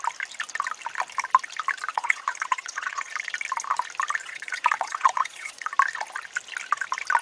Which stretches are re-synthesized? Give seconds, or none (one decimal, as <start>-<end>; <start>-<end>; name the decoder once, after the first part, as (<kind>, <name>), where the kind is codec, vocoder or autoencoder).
1.9-3.1 (vocoder, Vocos); 4.2-5.7